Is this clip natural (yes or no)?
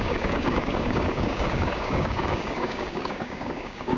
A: no